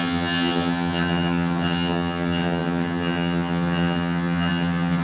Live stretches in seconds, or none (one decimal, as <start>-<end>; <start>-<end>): none